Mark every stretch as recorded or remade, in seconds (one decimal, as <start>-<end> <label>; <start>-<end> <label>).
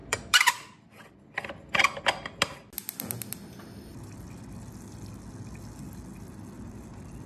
0.0-2.0 remade; 2.0-3.9 recorded; 3.9-4.4 remade; 4.4-7.3 recorded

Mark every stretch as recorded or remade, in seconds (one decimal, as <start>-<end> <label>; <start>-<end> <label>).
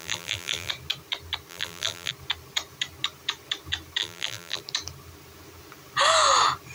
0.0-0.7 remade; 0.7-1.5 recorded; 1.5-2.1 remade; 2.1-4.0 recorded; 4.0-4.6 remade; 4.6-6.7 recorded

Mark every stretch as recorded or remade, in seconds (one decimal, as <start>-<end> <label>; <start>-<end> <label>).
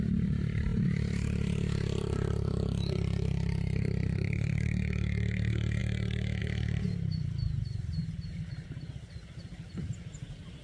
0.0-5.8 remade; 5.8-6.4 recorded; 6.4-10.6 remade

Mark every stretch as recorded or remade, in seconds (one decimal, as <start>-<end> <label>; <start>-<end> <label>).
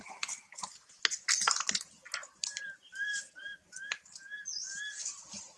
0.0-2.2 recorded; 2.2-3.4 remade; 3.4-5.6 recorded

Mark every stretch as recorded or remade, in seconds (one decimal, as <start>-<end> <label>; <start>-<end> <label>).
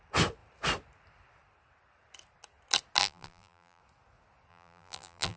0.0-3.0 recorded; 3.0-3.8 remade; 3.8-4.5 recorded; 4.5-5.4 remade